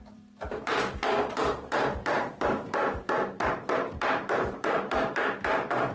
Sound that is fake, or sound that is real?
fake